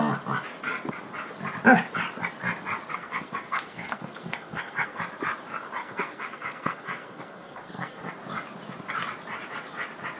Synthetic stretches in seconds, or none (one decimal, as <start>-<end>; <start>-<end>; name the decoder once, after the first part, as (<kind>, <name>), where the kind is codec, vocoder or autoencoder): 2.9-5.0 (codec, SNAC); 5.8-8.1